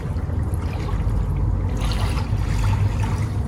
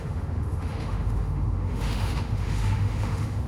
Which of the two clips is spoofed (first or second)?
second